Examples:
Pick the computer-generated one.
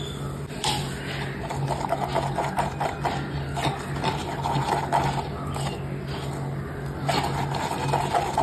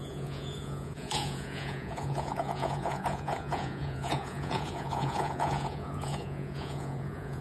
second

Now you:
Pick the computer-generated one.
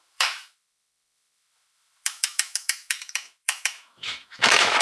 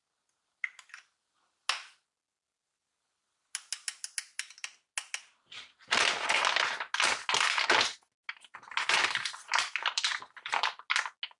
first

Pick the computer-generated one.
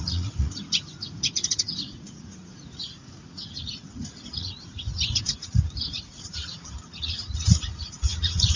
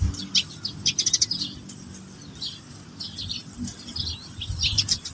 first